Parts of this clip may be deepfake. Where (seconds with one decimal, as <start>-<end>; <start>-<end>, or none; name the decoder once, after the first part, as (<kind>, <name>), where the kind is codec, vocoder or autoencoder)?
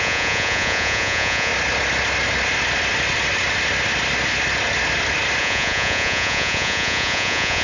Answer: 0.0-1.5 (vocoder, Vocos); 5.4-7.6